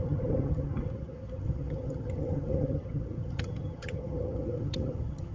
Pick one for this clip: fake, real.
fake